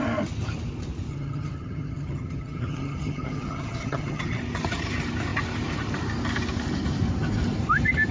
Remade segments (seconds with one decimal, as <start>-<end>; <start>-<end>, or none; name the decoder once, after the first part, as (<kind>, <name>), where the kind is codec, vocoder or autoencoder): 1.1-4.4 (vocoder, HiFi-GAN)